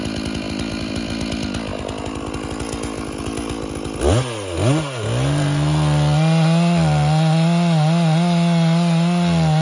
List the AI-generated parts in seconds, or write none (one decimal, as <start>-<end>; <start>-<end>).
none